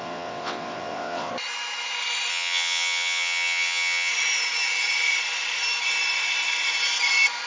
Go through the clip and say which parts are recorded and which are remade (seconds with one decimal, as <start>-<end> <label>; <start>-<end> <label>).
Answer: 0.0-1.3 remade; 1.3-2.3 recorded; 2.3-4.1 remade; 4.1-7.5 recorded